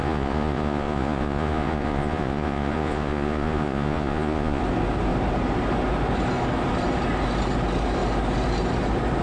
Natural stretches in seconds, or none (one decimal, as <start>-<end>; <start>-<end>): 4.6-9.2